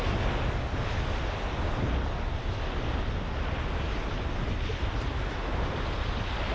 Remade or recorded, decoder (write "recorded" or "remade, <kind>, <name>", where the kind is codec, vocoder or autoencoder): recorded